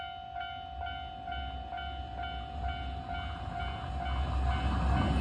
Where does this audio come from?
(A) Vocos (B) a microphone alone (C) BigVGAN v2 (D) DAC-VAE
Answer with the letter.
B